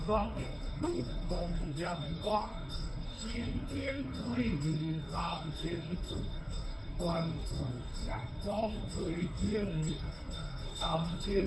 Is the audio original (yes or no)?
no